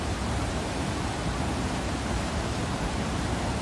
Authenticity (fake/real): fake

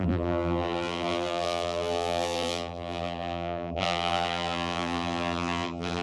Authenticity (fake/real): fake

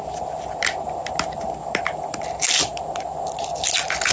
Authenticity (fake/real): real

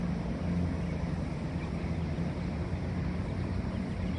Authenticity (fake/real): real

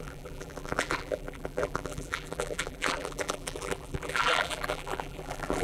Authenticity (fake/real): fake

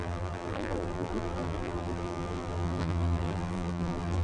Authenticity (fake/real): fake